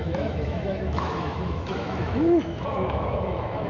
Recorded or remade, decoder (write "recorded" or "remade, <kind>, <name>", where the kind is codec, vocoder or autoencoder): remade, autoencoder, DAC-VAE